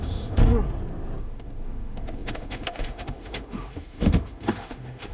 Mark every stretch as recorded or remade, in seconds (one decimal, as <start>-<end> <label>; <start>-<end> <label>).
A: 0.0-0.4 remade; 0.4-1.2 recorded; 1.2-5.1 remade